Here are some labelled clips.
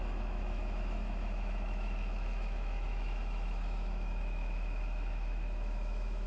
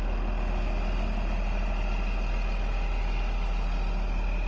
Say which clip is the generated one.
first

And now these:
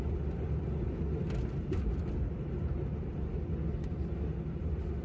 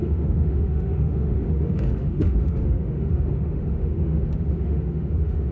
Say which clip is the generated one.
second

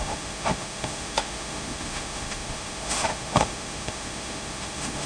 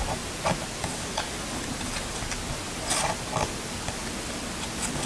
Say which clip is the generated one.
first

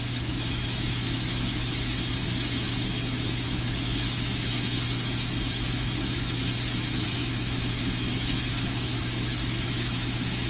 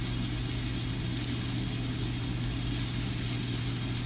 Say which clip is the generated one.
first